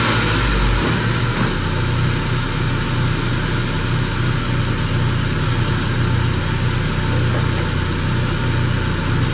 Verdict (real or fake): real